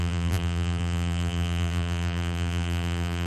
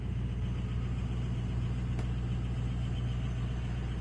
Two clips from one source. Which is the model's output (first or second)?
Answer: first